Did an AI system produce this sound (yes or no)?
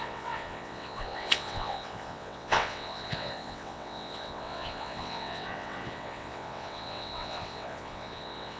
yes